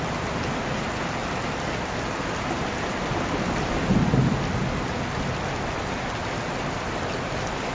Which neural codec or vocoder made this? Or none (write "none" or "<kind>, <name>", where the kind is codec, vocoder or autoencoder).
none